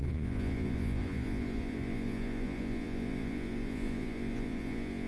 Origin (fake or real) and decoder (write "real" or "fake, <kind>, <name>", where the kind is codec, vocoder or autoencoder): fake, vocoder, Vocos